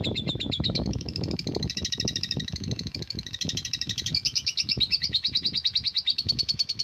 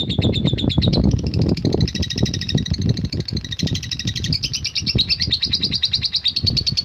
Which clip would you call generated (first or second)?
first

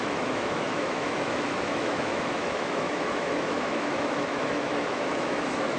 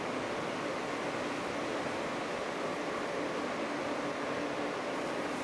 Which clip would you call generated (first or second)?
first